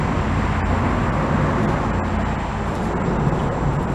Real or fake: real